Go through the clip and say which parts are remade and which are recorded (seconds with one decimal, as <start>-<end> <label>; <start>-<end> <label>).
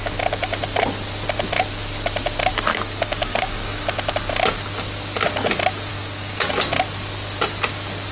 0.0-2.7 recorded; 2.7-4.1 remade; 4.1-5.9 recorded; 5.9-6.5 remade; 6.5-8.1 recorded